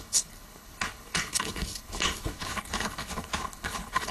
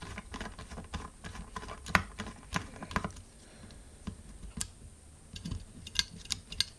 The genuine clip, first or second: second